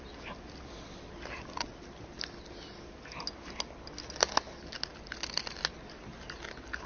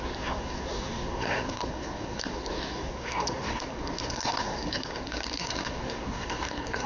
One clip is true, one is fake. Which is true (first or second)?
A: first